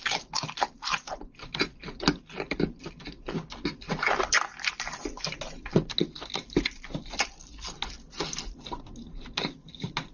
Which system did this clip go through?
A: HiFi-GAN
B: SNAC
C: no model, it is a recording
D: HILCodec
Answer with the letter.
C